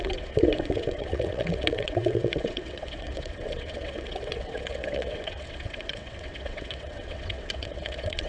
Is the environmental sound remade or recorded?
remade